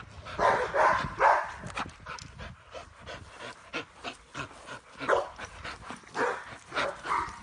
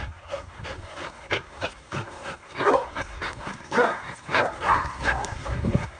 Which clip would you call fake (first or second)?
second